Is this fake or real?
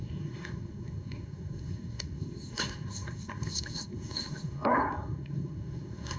fake